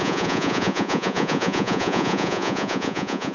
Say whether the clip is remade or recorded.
remade